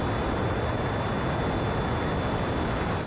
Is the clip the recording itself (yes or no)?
yes